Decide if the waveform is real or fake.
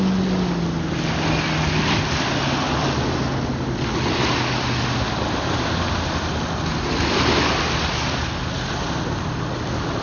real